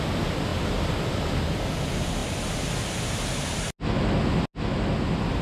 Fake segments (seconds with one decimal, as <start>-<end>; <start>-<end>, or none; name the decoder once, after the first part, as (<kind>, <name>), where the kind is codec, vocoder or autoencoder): 0.5-1.7 (vocoder, BigVGAN v2)